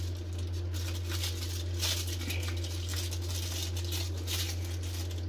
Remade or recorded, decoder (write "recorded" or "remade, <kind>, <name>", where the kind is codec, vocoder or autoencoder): recorded